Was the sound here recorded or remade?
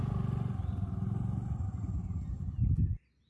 recorded